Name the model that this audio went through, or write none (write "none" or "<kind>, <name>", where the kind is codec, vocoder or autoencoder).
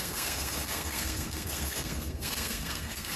codec, SNAC